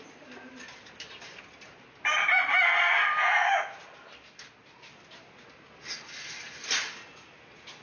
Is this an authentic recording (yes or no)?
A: yes